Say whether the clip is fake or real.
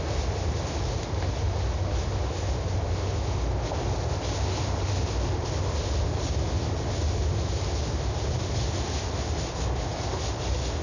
real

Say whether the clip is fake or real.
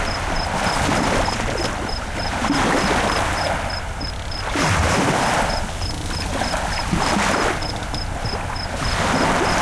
real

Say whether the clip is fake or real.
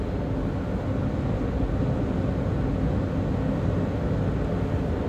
real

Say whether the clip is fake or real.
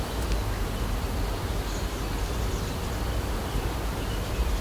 real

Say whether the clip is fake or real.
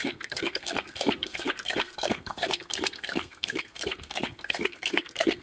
fake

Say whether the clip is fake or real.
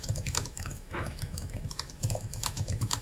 fake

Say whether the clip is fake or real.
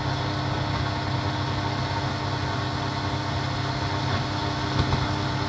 real